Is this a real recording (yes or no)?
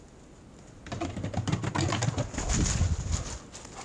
yes